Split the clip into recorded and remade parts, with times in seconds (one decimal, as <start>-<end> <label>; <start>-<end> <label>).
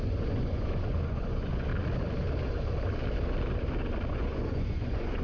0.0-1.7 remade; 1.7-4.1 recorded; 4.1-5.2 remade